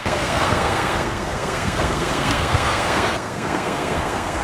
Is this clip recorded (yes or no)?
no